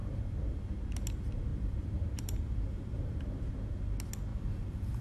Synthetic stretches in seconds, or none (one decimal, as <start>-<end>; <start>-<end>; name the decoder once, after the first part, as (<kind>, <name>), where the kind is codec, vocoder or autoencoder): 0.0-0.6 (vocoder, BigVGAN v2); 1.5-3.5; 4.3-5.0